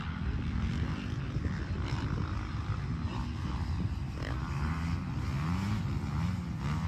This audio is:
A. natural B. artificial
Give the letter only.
A